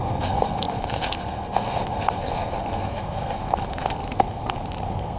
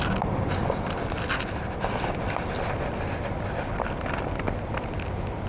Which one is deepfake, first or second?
first